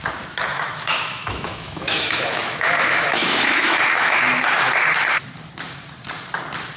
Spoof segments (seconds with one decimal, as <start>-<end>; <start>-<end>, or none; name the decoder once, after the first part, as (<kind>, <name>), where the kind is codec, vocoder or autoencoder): 0.5-4.2 (autoencoder, DAC-VAE)